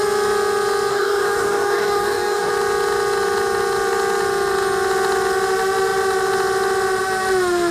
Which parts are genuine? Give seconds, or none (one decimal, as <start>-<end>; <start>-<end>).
0.0-0.9; 2.5-7.7